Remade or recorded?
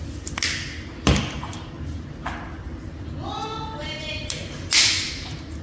recorded